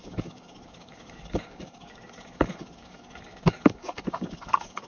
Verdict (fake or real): fake